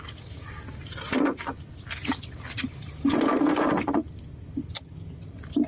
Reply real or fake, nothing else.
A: real